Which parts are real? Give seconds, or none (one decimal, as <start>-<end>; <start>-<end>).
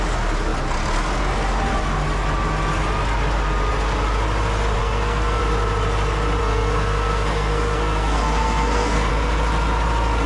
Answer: 0.0-4.8; 5.4-6.4; 9.1-10.3